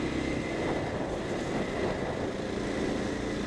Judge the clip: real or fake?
real